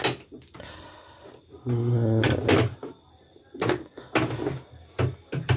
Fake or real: real